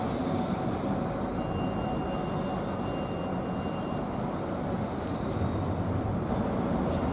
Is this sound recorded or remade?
recorded